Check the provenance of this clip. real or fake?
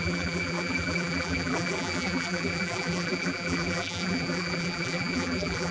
fake